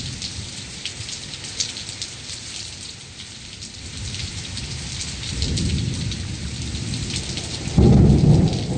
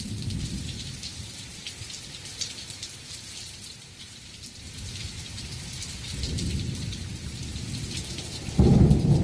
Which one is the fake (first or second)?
second